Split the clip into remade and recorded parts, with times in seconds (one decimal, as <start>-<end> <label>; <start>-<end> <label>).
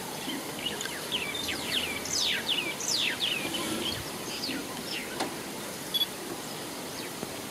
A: 0.0-5.0 remade; 5.0-6.4 recorded; 6.4-7.5 remade